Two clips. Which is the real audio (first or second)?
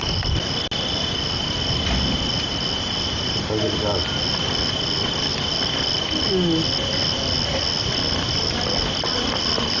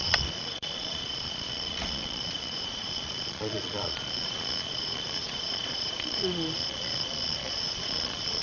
first